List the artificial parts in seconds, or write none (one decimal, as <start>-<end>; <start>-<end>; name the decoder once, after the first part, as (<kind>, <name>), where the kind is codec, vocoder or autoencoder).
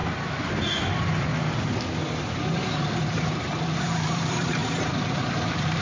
0.0-1.3 (vocoder, BigVGAN v2); 2.8-5.8